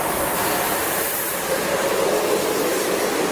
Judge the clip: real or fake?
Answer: fake